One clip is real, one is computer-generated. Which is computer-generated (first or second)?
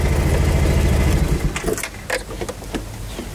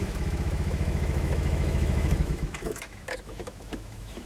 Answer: second